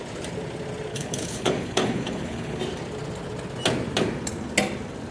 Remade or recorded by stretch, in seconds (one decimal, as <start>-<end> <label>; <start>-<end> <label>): 0.0-0.9 recorded; 0.9-2.6 remade; 2.6-5.1 recorded